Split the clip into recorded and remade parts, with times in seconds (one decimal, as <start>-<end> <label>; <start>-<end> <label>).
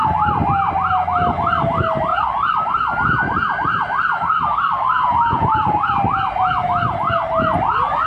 0.0-4.9 recorded; 4.9-5.9 remade; 5.9-8.1 recorded